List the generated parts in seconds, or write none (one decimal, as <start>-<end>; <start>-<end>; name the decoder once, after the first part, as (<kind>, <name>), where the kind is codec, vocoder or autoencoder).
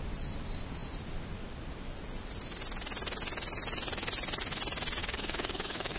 5.0-6.0 (codec, DAC)